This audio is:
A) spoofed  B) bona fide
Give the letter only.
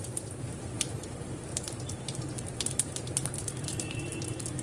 A